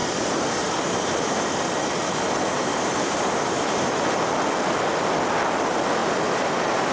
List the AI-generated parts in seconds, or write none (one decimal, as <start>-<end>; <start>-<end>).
0.0-4.0; 6.0-6.9